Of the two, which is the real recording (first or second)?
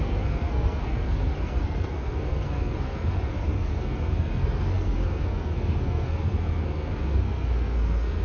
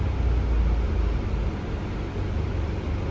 second